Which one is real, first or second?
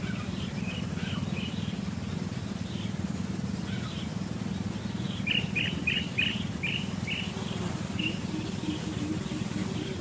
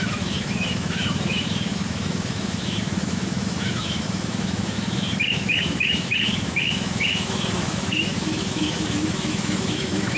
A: first